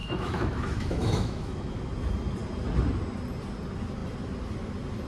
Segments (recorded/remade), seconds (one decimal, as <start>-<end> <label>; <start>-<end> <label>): 0.0-1.8 remade; 1.8-5.1 recorded